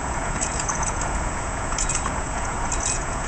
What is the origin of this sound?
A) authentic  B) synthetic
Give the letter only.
B